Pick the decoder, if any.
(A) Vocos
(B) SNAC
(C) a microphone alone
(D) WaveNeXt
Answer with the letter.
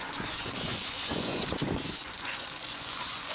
A